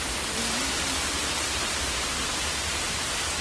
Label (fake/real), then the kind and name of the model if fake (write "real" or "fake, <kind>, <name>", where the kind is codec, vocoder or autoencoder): real